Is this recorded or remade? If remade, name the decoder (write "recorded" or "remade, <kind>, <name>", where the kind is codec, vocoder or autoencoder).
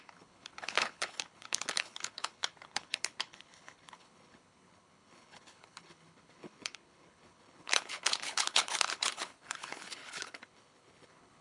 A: remade, codec, HILCodec